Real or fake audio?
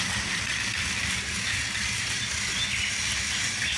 real